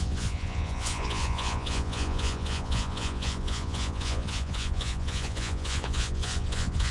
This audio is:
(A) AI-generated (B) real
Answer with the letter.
A